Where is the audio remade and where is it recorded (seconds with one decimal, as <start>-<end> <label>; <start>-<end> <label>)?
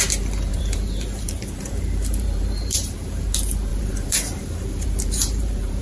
0.0-0.5 recorded; 0.5-3.3 remade; 3.3-3.7 recorded; 3.7-5.8 remade